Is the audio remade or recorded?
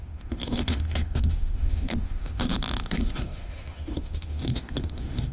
remade